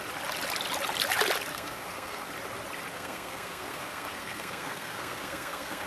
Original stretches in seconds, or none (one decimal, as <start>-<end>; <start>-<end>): 0.0-1.5; 2.3-2.9